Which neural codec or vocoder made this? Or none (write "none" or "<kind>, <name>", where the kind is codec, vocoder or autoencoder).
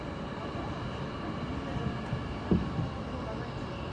none